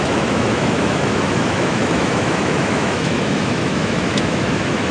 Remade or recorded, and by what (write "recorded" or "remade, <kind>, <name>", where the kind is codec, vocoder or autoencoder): remade, autoencoder, DAC-VAE